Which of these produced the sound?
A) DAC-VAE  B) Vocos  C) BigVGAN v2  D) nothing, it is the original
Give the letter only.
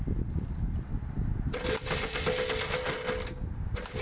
D